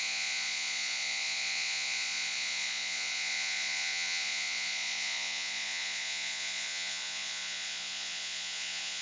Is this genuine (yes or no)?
no